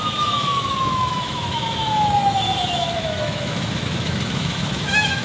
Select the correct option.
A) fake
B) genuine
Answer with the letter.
A